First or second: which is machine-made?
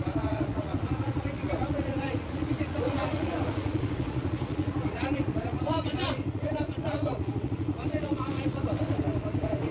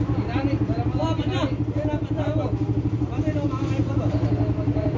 first